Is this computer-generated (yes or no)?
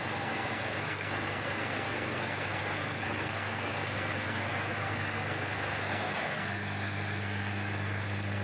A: yes